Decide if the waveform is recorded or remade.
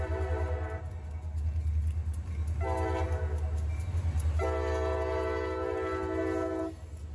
recorded